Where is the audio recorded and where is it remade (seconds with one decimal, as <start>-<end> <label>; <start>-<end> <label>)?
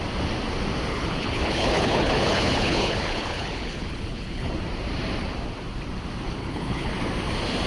0.0-0.9 recorded; 0.9-4.5 remade; 4.5-6.4 recorded; 6.4-6.9 remade; 6.9-7.7 recorded